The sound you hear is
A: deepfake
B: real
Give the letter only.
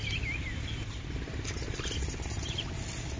B